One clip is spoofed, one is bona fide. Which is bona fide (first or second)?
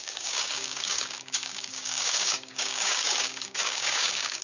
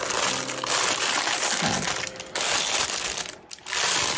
second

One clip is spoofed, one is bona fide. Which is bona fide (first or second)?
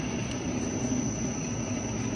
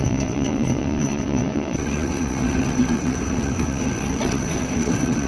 first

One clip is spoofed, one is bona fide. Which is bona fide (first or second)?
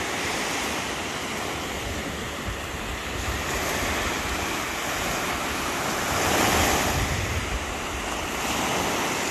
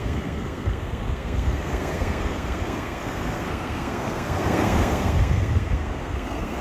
first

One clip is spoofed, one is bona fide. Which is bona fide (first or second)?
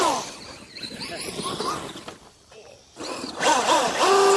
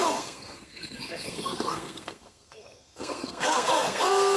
first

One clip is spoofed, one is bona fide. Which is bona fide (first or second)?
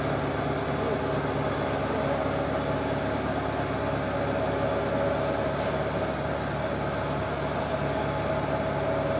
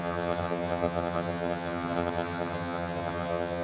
first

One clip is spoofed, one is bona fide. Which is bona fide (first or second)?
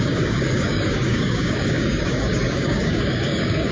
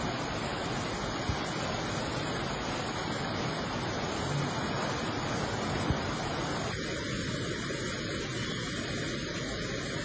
second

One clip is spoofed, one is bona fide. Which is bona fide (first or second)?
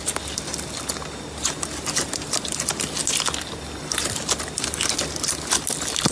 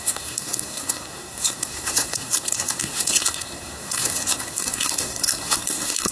first